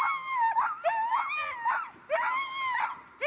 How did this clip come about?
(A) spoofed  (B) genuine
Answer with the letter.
B